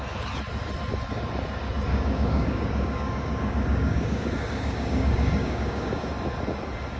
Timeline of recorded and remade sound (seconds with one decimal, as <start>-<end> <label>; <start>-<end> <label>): 0.0-1.9 recorded; 1.9-6.1 remade; 6.1-7.0 recorded